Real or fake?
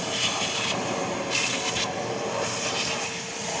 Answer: real